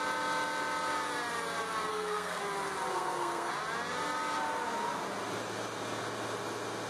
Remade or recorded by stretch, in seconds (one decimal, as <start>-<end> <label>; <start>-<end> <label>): 0.0-1.9 recorded; 1.9-2.4 remade; 2.4-2.9 recorded; 2.9-3.5 remade; 3.5-6.9 recorded